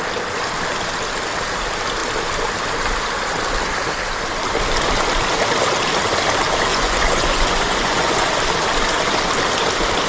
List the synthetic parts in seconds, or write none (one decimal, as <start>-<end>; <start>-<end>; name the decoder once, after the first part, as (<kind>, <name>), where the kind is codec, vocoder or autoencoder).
6.7-8.3 (vocoder, Vocos)